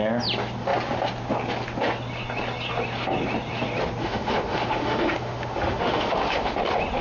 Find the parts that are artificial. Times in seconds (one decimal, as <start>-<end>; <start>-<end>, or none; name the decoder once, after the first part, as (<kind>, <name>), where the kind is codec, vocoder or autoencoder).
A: 4.0-6.6 (autoencoder, DAC-VAE)